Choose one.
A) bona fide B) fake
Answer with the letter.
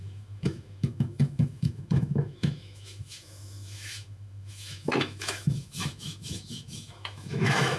B